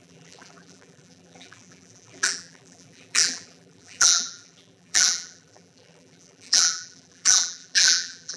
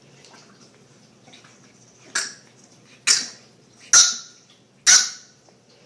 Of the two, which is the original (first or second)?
second